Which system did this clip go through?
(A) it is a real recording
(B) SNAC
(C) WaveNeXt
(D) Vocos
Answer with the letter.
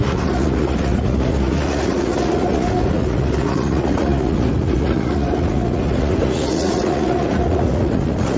D